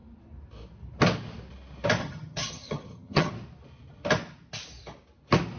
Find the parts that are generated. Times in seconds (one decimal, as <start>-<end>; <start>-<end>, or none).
2.0-3.3